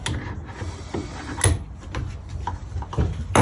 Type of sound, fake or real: real